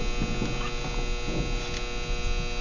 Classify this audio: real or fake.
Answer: real